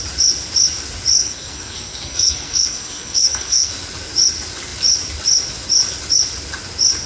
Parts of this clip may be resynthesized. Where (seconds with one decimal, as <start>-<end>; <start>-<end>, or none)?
1.2-3.7